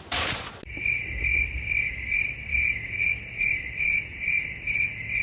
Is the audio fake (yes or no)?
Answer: no